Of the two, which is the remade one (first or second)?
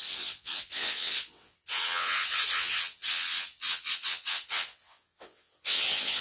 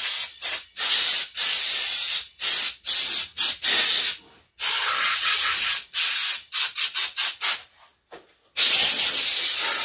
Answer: first